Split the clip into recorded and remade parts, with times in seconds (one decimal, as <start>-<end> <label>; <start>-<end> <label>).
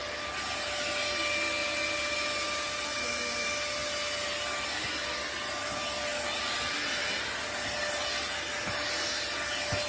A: 0.0-9.9 recorded